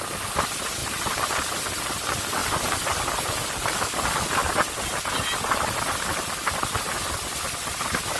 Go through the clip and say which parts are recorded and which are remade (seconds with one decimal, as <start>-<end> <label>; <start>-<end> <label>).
0.0-8.2 recorded